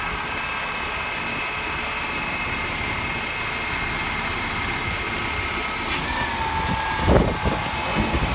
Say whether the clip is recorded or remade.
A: recorded